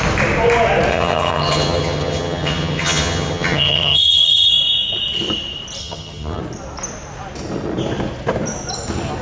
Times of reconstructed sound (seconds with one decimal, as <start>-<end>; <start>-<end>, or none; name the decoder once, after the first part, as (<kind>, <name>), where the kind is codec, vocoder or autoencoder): 0.9-4.5 (vocoder, HiFi-GAN); 5.8-6.4